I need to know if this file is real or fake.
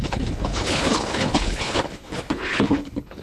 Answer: fake